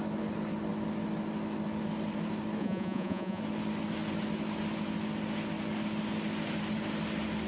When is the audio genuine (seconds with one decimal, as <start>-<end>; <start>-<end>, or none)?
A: 0.0-2.6; 3.4-7.5